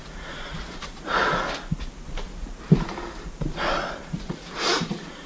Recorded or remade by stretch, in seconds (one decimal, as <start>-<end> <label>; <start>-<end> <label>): 0.0-1.2 remade; 1.2-4.0 recorded; 4.0-5.3 remade

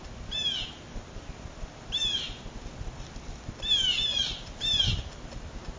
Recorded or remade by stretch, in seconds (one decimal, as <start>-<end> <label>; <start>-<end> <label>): 0.0-5.8 recorded

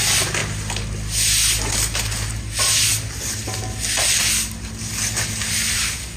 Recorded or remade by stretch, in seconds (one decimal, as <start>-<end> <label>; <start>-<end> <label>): 0.0-6.2 recorded

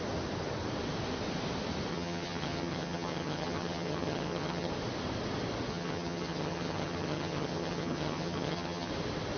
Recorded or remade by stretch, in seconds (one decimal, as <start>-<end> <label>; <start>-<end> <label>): 0.0-1.9 recorded; 1.9-4.7 remade; 4.7-5.7 recorded; 5.7-8.9 remade; 8.9-9.4 recorded

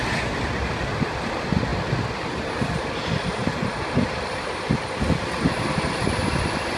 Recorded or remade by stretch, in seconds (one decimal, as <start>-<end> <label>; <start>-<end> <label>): 0.0-6.8 recorded

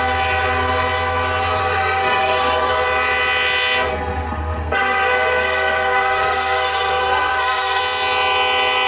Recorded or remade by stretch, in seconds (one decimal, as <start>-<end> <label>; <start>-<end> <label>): 0.0-1.6 recorded; 1.6-2.7 remade; 2.7-3.9 recorded; 3.9-7.8 remade; 7.8-8.9 recorded